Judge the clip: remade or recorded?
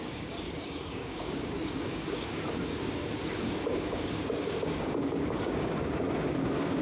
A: remade